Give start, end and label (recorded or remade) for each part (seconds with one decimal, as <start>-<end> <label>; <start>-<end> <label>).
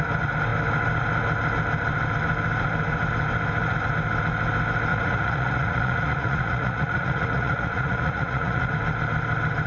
0.0-4.9 recorded; 4.9-8.7 remade; 8.7-9.7 recorded